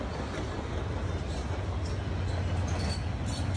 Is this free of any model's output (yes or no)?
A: yes